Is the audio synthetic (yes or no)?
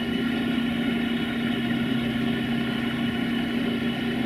no